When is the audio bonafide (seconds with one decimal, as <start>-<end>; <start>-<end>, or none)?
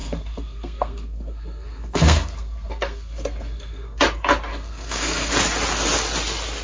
4.0-4.5; 5.3-6.6